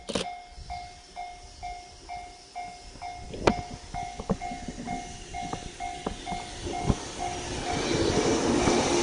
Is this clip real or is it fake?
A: real